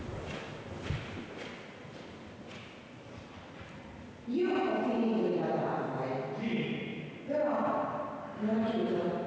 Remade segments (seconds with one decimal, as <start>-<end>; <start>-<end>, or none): none